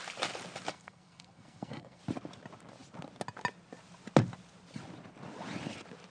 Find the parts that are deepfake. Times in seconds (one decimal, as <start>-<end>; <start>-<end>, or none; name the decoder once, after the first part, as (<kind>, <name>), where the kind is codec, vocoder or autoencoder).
0.7-2.0 (codec, SNAC)